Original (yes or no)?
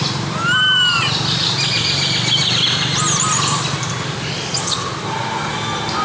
yes